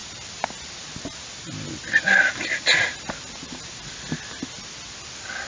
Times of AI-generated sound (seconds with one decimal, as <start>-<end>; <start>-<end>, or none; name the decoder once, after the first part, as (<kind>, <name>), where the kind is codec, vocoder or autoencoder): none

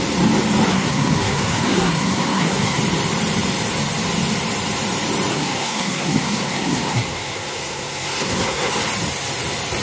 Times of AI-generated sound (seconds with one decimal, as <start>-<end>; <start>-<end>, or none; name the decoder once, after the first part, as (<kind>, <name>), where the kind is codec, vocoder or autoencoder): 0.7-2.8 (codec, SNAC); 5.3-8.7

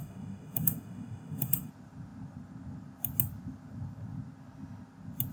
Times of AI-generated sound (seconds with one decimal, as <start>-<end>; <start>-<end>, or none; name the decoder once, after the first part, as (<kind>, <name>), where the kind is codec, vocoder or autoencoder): 0.0-1.7 (autoencoder, DAC-VAE)

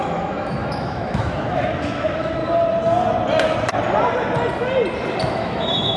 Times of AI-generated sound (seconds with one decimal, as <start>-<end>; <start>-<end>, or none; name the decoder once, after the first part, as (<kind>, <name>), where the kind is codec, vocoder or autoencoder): 0.0-2.4 (autoencoder, DAC-VAE); 5.3-6.0

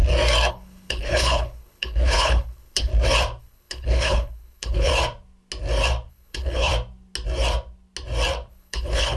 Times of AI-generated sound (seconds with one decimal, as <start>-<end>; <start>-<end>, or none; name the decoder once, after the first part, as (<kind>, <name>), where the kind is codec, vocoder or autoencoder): 0.5-2.9 (codec, HILCodec); 3.4-4.9; 6.1-6.7; 8.5-9.2

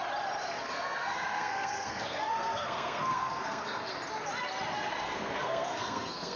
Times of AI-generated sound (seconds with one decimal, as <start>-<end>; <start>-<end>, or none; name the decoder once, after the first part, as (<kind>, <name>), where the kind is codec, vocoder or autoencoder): 0.7-3.9 (codec, SNAC); 4.9-6.4

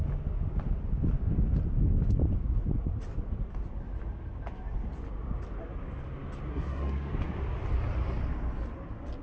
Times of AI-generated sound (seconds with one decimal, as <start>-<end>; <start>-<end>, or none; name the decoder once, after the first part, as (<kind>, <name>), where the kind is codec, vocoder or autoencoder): 6.5-7.1 (codec, SNAC)